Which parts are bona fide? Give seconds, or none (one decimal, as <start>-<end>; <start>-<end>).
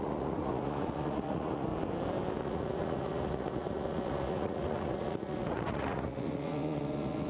1.7-2.4